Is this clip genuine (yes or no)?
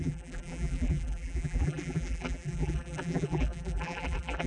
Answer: no